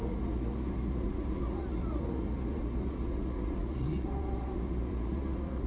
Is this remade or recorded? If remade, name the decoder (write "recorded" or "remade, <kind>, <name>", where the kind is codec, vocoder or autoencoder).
remade, vocoder, Vocos